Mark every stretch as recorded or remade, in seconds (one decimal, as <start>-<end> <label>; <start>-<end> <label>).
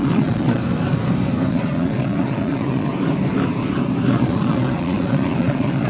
0.0-0.6 remade; 0.6-1.5 recorded; 1.5-2.9 remade; 2.9-4.1 recorded; 4.1-5.9 remade